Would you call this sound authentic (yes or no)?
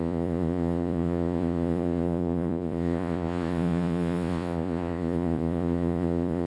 no